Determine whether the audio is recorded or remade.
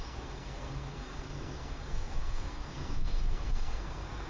remade